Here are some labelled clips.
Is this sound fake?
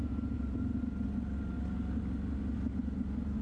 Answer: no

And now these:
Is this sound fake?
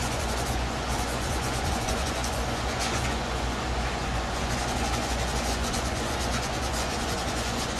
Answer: yes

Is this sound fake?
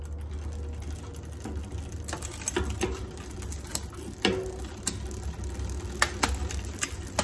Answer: no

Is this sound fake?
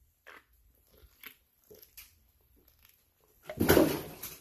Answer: no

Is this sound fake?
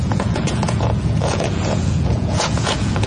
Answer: yes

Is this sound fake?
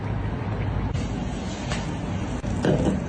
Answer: no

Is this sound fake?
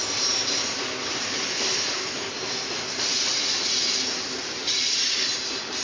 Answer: no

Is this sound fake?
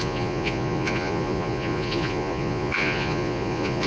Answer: yes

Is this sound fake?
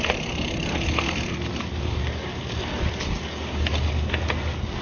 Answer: no